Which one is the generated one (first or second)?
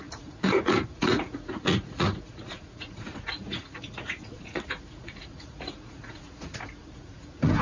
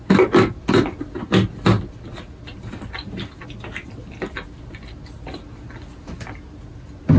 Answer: first